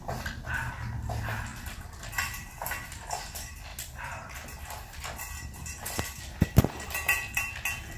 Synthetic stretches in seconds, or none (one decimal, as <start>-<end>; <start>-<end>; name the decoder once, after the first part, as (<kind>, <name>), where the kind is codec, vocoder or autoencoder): none